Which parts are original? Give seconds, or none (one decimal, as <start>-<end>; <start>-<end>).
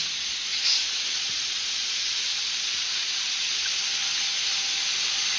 0.0-0.5; 3.7-5.4